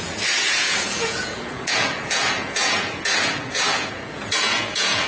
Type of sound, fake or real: fake